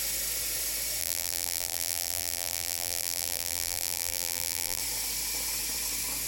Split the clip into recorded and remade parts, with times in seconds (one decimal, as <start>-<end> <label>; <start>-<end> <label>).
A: 0.0-1.0 recorded; 1.0-4.8 remade; 4.8-6.3 recorded